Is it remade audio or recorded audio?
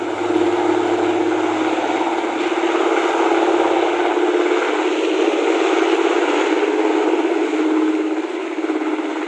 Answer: recorded